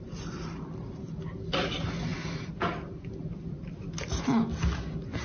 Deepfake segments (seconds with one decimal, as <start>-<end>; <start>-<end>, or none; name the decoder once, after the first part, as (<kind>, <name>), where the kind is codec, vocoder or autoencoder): none